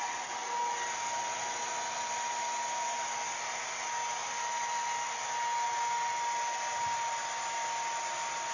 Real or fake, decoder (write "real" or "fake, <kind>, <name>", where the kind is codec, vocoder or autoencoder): real